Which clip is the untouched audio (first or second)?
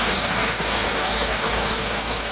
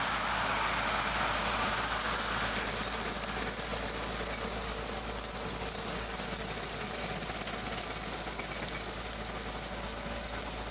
second